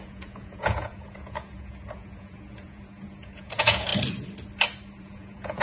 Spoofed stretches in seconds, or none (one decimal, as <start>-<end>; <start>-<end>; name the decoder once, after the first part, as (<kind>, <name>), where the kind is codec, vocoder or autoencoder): 0.0-3.9 (vocoder, Vocos); 5.0-5.6